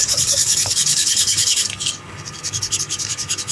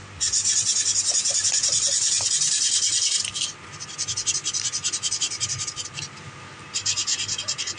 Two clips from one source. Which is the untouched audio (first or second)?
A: second